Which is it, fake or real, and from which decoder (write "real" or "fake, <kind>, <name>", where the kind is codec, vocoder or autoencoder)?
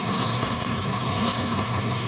fake, codec, SNAC